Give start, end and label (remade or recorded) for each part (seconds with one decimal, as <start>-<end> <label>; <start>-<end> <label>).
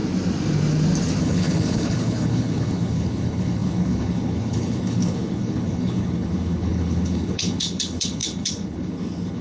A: 0.0-1.2 recorded; 1.2-9.4 remade